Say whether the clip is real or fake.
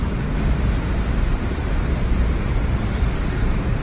fake